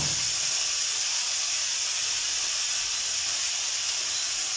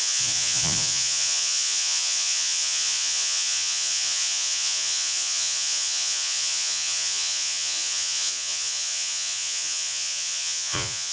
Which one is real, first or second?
first